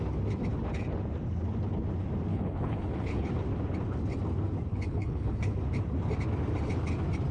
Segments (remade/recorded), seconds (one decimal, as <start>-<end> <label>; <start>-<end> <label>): 0.0-2.3 recorded; 2.3-3.3 remade; 3.3-4.7 recorded; 4.7-5.5 remade; 5.5-7.3 recorded